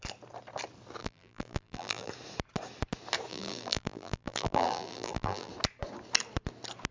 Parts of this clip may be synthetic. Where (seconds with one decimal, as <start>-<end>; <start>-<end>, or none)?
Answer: 1.0-2.1; 3.3-5.5